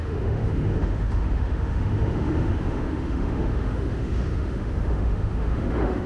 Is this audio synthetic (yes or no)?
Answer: yes